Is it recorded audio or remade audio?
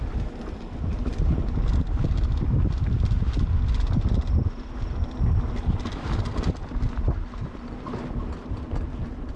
recorded